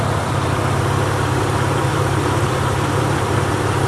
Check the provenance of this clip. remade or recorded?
remade